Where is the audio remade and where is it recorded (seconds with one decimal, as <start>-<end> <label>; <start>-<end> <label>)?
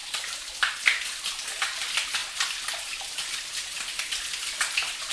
0.0-1.2 remade; 1.2-5.1 recorded